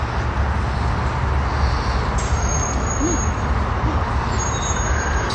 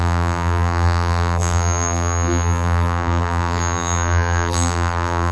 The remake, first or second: second